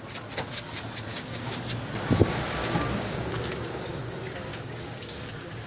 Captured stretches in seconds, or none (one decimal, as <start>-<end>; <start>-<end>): 0.0-1.1; 1.6-2.6; 4.1-4.5